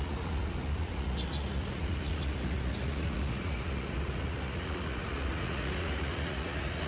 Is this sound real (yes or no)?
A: no